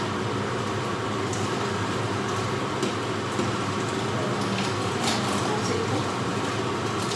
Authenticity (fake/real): real